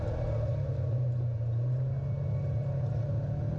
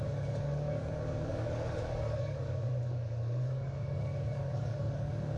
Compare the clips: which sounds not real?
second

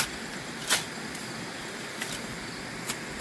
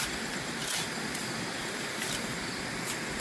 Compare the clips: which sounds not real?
second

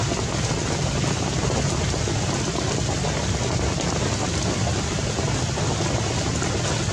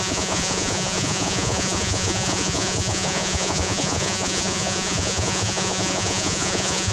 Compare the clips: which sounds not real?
second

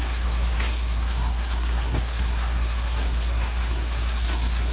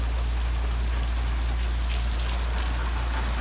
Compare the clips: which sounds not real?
first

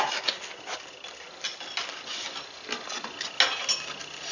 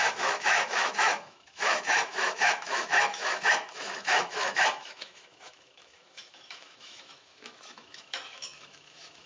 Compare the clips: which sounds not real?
second